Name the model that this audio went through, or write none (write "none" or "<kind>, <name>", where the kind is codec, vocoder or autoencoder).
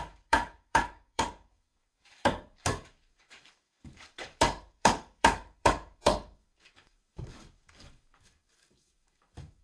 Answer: codec, DAC